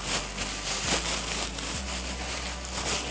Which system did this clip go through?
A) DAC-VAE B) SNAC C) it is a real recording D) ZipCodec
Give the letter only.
C